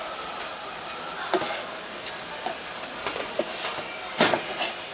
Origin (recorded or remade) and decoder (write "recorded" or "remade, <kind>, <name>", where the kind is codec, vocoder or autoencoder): recorded